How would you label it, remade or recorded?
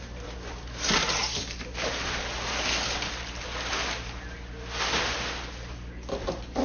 recorded